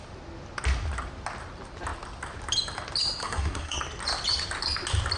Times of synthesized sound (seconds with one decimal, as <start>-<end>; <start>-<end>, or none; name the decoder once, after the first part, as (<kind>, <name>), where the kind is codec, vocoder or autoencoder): 3.2-3.8 (codec, SNAC)